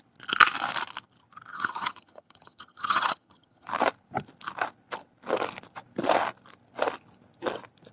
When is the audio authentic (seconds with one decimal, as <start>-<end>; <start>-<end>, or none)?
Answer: 0.0-1.5; 3.7-7.9